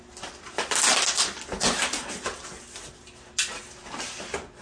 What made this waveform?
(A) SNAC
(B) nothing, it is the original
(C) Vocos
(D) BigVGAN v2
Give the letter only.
B